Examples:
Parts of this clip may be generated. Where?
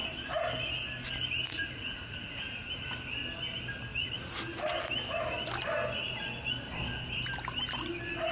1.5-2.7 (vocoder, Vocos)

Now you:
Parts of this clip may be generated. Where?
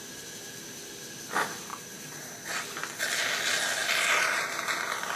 3.8-4.6 (vocoder, BigVGAN v2)